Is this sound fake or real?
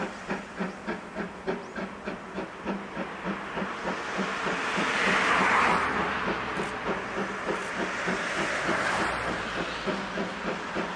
real